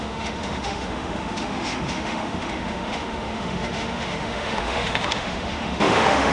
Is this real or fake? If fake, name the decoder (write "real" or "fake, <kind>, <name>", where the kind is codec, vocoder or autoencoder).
fake, autoencoder, DAC-VAE